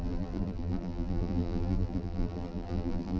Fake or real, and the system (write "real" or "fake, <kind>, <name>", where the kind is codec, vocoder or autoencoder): fake, vocoder, BigVGAN v2